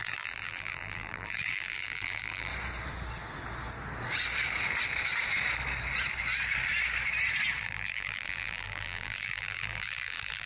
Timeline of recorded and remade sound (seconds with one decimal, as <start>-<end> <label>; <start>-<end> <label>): 0.0-2.5 remade; 2.5-7.6 recorded; 7.6-10.5 remade